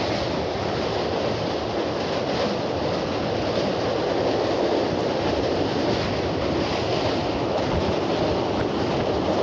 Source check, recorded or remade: recorded